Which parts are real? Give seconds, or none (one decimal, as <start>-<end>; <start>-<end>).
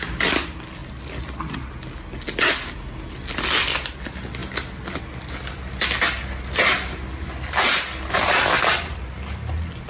0.0-9.9